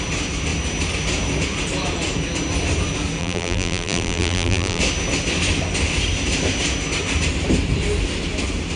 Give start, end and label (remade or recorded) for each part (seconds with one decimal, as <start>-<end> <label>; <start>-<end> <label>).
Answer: 0.0-3.2 recorded; 3.2-4.8 remade; 4.8-8.8 recorded